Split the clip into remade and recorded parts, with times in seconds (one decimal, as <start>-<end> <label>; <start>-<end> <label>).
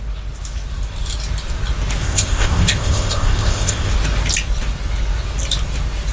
0.0-2.0 recorded; 2.0-3.9 remade; 3.9-6.1 recorded